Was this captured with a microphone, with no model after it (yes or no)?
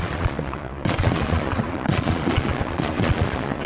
no